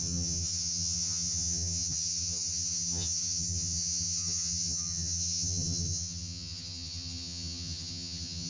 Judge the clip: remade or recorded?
remade